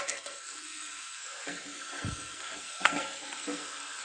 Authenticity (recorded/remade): remade